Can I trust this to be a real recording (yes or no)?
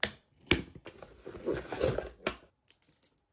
yes